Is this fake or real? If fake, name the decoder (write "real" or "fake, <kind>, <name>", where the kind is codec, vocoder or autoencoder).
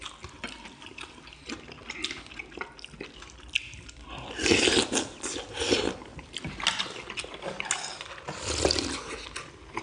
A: real